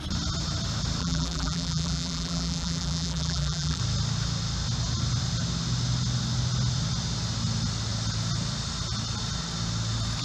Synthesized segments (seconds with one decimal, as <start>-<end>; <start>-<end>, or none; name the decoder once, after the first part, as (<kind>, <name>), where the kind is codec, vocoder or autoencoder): 1.0-3.8 (vocoder, BigVGAN v2)